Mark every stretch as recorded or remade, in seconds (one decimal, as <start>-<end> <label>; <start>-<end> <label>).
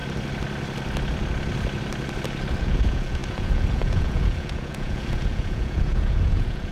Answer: 0.0-2.6 recorded; 2.6-6.7 remade